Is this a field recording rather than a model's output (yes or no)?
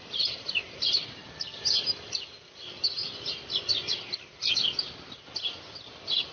yes